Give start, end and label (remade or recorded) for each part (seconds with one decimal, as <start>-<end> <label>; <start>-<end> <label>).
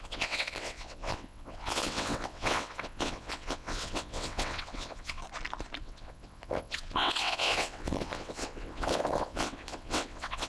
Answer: 0.0-5.2 remade; 5.2-5.8 recorded; 5.8-10.5 remade